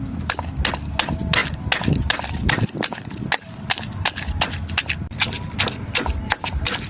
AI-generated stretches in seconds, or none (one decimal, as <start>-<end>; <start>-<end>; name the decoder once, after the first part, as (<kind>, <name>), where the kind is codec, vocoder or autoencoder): none